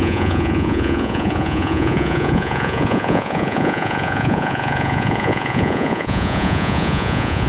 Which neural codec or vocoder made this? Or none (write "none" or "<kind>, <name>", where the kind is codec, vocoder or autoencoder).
vocoder, Vocos